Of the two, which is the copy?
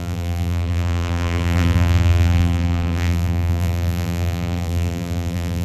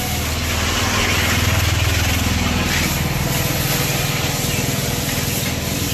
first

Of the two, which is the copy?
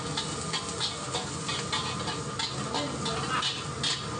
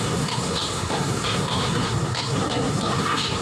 second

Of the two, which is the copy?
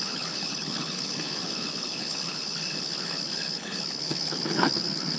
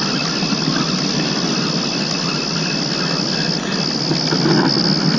first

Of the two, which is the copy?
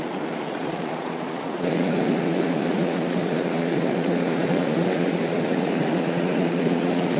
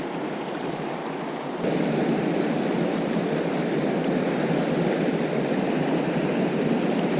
first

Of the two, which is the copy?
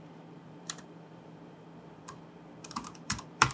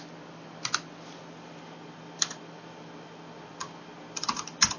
first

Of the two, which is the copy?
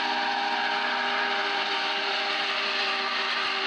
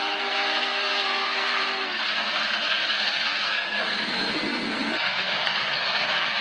second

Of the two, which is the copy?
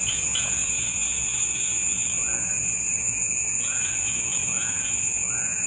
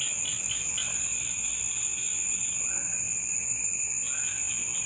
first